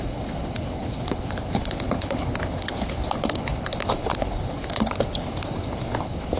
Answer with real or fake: fake